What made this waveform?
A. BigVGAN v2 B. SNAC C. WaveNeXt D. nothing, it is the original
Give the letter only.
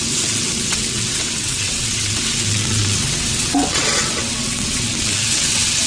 C